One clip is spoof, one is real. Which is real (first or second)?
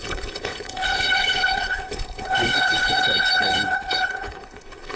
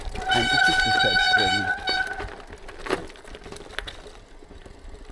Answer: second